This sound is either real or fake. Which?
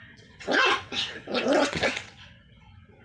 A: fake